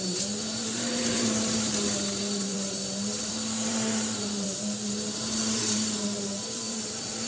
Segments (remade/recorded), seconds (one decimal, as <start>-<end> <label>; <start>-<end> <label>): 0.0-7.3 remade